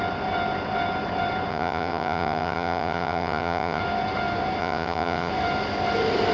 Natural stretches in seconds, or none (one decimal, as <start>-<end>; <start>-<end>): 0.0-1.5; 3.8-4.6; 5.3-6.3